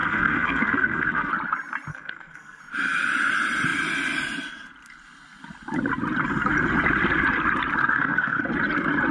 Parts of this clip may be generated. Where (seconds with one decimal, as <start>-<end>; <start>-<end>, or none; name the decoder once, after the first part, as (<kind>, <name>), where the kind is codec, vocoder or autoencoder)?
0.0-1.3 (codec, SNAC); 1.9-2.6; 7.8-8.4